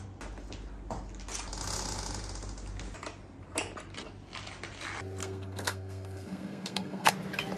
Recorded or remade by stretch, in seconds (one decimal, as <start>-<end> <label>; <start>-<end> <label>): 0.0-5.2 recorded; 5.2-7.1 remade; 7.1-7.6 recorded